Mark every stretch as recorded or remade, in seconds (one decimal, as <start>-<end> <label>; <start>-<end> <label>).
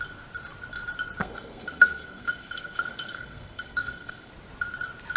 0.0-1.2 recorded; 1.2-4.3 remade; 4.3-5.2 recorded